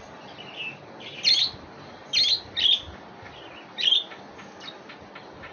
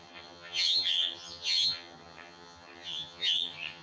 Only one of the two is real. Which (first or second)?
first